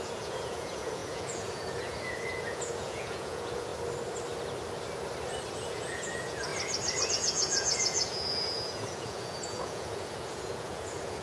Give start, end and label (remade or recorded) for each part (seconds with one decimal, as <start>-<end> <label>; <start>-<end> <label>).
0.0-3.7 remade; 3.7-5.5 recorded; 5.5-6.5 remade; 6.5-7.1 recorded; 7.1-11.2 remade